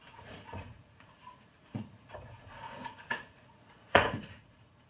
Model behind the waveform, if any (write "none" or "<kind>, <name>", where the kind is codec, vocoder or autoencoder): vocoder, Vocos